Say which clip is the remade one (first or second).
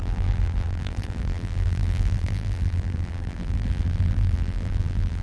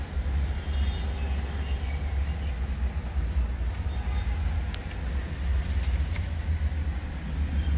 first